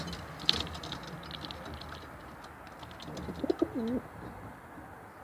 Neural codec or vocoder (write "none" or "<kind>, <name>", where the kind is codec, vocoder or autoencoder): none